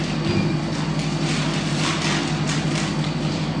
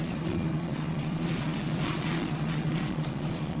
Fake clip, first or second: second